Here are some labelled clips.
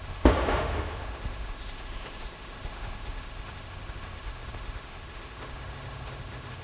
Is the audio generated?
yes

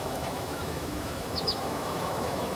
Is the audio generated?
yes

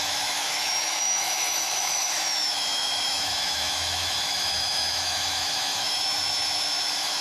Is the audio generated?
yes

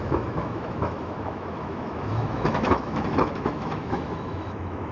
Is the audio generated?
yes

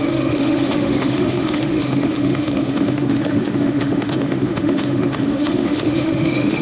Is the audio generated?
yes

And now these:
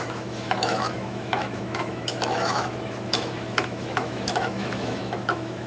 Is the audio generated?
yes